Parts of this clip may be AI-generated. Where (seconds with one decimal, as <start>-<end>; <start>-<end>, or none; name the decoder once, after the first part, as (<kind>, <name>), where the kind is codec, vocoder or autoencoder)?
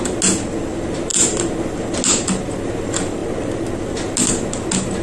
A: none